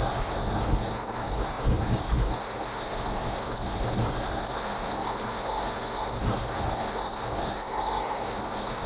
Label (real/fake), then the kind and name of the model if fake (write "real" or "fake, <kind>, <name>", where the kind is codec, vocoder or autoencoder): fake, codec, SNAC